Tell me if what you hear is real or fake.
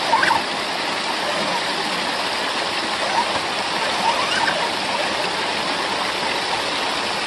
real